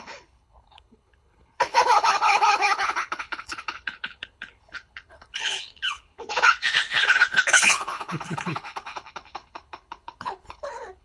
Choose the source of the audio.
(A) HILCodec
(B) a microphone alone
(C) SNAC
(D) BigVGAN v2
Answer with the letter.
A